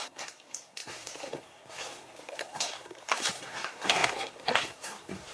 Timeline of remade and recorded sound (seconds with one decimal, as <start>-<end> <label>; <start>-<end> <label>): 0.0-5.3 remade